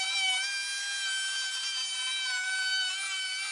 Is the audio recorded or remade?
recorded